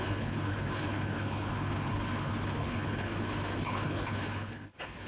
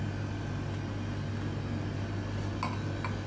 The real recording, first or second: second